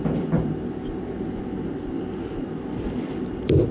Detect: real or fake real